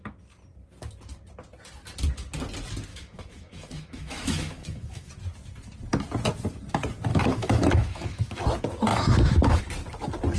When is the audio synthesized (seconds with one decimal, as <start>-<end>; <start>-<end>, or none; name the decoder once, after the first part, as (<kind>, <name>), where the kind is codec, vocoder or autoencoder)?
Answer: 2.9-5.1 (autoencoder, DAC-VAE); 7.1-8.4; 8.9-9.6